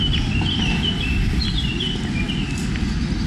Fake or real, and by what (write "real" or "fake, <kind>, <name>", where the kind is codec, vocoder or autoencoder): real